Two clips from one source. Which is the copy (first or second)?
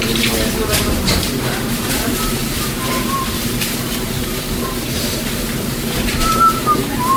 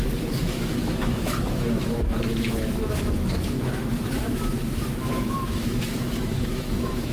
second